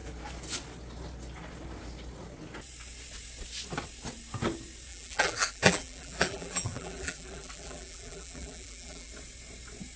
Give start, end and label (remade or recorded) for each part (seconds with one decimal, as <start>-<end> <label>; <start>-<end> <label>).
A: 0.0-4.9 recorded; 4.9-9.1 remade; 9.1-10.0 recorded